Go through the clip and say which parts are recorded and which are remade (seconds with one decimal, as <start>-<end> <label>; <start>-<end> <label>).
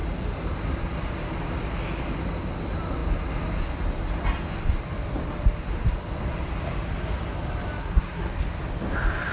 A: 0.0-7.8 recorded; 7.8-8.4 remade; 8.4-9.3 recorded